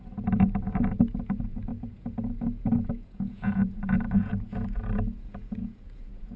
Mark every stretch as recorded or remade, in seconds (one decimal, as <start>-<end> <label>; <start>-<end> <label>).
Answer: 0.0-6.4 remade